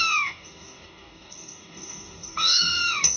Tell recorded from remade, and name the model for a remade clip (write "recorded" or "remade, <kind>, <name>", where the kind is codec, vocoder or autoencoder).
remade, codec, DAC